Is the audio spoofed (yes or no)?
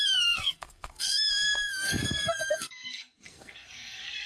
yes